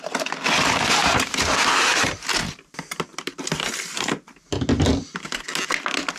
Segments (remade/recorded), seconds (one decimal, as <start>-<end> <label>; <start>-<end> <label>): 0.0-1.0 recorded; 1.0-2.3 remade; 2.3-3.1 recorded; 3.1-3.7 remade; 3.7-6.2 recorded